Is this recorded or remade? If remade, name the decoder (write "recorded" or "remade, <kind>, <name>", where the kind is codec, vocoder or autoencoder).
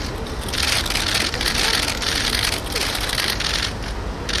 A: recorded